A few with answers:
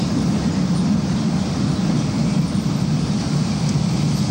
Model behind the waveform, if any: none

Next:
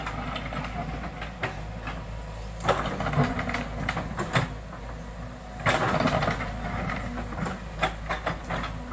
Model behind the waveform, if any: none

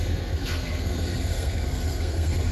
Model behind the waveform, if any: codec, SNAC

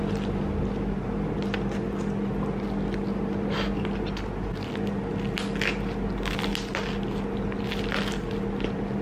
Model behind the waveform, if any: none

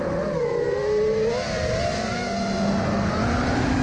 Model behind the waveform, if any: none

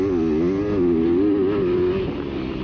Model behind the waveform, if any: none